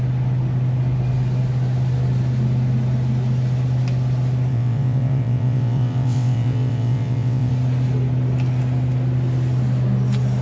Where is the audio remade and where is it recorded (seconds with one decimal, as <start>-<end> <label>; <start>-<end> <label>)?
0.0-4.5 recorded; 4.5-7.5 remade; 7.5-10.4 recorded